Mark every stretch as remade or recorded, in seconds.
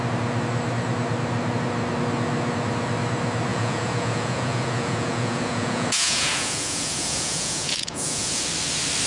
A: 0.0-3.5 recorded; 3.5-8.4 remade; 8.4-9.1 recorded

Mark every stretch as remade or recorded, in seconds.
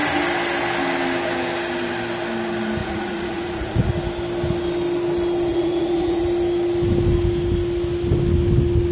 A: 0.0-2.8 recorded; 2.8-3.9 remade; 3.9-5.5 recorded; 5.5-6.2 remade; 6.2-8.9 recorded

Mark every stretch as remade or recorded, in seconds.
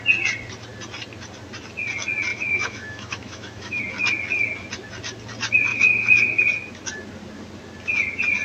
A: 0.0-2.3 recorded; 2.3-3.8 remade; 3.8-5.7 recorded; 5.7-6.4 remade; 6.4-8.4 recorded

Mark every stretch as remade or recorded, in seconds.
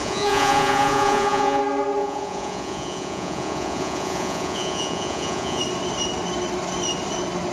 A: 0.0-1.6 remade; 1.6-2.0 recorded; 2.0-5.6 remade; 5.6-7.5 recorded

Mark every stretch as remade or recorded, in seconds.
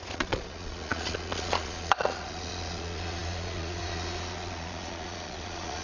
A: 0.0-5.8 remade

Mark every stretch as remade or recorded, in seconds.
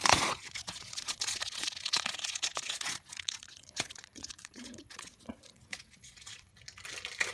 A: 0.0-6.5 remade; 6.5-7.3 recorded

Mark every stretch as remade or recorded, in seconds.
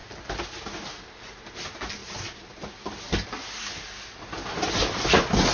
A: 0.0-5.5 recorded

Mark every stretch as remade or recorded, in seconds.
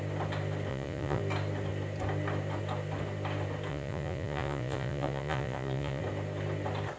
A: 0.0-0.7 recorded; 0.7-1.2 remade; 1.2-3.7 recorded; 3.7-6.0 remade; 6.0-7.0 recorded